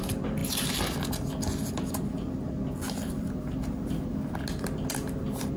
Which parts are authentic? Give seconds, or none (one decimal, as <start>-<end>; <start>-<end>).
0.0-5.6